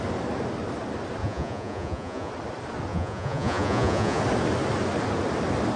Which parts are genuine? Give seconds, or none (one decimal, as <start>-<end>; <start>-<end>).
0.0-1.2; 2.3-2.9; 4.2-5.8